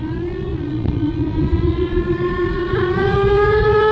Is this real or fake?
fake